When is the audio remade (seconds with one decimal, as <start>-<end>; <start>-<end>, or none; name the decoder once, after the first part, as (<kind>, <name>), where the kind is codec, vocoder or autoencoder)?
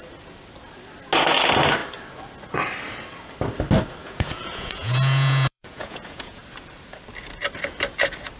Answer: 4.0-6.4 (vocoder, Vocos)